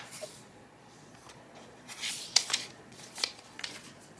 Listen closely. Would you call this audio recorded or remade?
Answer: remade